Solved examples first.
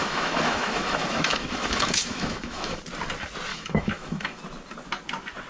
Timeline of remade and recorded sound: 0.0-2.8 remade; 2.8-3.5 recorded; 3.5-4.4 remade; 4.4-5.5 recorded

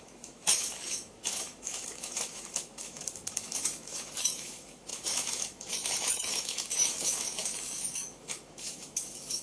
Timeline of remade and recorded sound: 0.0-9.4 remade

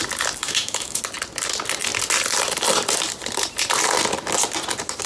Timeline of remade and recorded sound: 0.0-0.4 recorded; 0.4-1.0 remade; 1.0-5.1 recorded

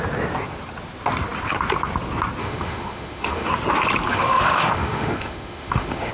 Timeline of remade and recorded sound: 0.0-2.4 recorded; 2.4-3.5 remade; 3.5-4.1 recorded; 4.1-6.1 remade

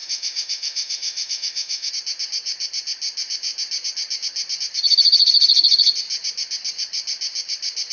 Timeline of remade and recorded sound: 0.0-1.9 remade; 1.9-7.9 recorded

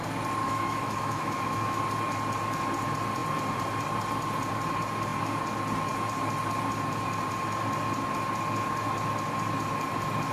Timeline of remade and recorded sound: 0.0-0.4 recorded; 0.4-1.8 remade; 1.8-10.3 recorded